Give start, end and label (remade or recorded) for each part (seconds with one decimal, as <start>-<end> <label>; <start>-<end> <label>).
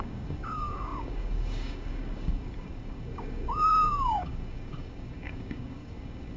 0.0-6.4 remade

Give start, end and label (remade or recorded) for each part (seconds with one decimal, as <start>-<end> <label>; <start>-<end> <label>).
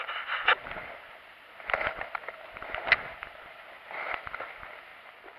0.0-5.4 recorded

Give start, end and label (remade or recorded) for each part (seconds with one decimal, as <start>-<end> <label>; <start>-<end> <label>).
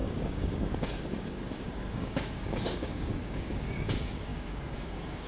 0.0-5.3 remade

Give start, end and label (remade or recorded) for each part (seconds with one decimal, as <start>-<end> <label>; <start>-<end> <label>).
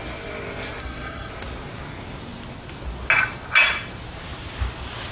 0.0-0.8 recorded; 0.8-1.3 remade; 1.3-5.1 recorded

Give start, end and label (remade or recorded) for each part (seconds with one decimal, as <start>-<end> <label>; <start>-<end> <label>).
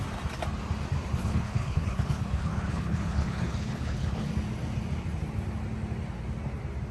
0.0-1.2 recorded; 1.2-4.3 remade; 4.3-6.9 recorded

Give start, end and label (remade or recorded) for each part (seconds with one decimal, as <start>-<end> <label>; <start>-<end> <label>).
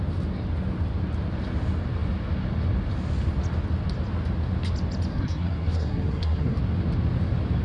0.0-5.1 recorded; 5.1-6.6 remade; 6.6-7.6 recorded